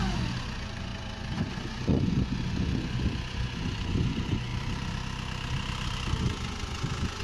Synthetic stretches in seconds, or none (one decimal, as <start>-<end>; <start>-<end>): 0.0-4.5; 6.2-7.2

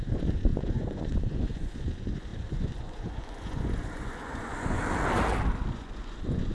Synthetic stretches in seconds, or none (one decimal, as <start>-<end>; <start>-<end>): 0.0-4.8; 5.7-6.5